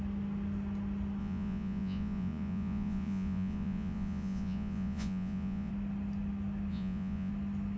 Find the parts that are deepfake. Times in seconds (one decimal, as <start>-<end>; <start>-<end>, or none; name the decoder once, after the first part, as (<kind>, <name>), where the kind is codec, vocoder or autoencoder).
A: 1.2-5.7 (vocoder, Vocos); 6.7-7.3